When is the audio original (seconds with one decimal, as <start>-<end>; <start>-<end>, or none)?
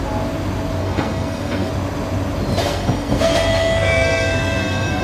0.0-0.8; 1.7-2.6